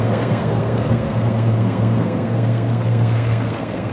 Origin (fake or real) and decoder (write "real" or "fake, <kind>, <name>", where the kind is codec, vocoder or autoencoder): fake, codec, SNAC